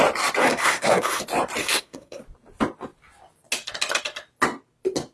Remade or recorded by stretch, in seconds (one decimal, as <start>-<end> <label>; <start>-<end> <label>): 0.0-0.4 recorded; 0.4-1.2 remade; 1.2-1.6 recorded; 1.6-2.2 remade; 2.2-5.1 recorded